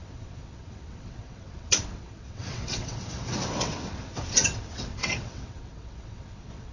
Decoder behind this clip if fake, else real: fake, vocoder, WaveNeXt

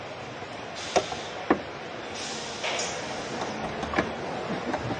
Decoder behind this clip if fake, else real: real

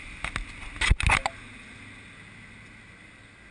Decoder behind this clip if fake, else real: real